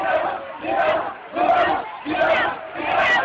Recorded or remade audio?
recorded